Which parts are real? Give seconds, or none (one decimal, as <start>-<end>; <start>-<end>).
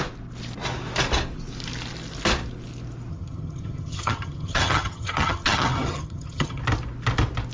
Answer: 0.0-3.1; 6.6-7.5